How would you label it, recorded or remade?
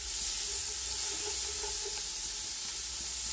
recorded